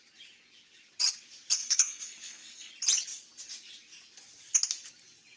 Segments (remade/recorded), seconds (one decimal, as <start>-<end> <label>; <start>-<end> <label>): 0.0-1.6 recorded; 1.6-2.7 remade; 2.7-5.4 recorded